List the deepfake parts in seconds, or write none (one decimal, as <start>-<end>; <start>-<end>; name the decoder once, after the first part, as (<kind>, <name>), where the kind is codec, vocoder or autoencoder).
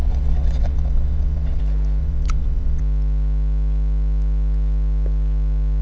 0.0-1.6 (vocoder, WaveNeXt); 2.0-2.8